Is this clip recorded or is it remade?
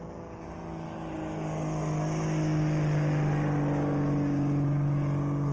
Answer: recorded